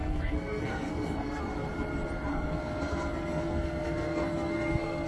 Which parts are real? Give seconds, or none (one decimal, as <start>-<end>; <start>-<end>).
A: 1.4-2.3